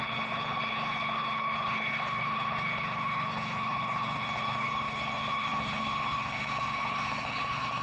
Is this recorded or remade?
remade